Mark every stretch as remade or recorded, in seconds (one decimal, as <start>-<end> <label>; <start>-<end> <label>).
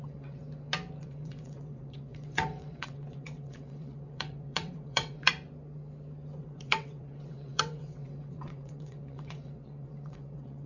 0.0-0.4 remade; 0.4-1.0 recorded; 1.0-5.3 remade; 5.3-6.4 recorded; 6.4-10.7 remade